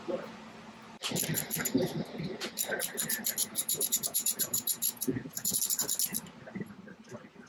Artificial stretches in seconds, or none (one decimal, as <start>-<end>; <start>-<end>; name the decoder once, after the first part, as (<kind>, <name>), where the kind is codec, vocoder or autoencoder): 3.4-5.6 (vocoder, Vocos)